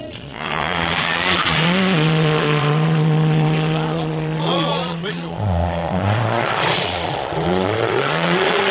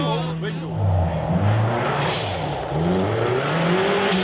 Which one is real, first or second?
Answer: second